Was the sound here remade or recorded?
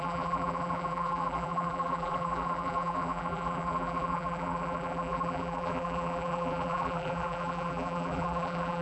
remade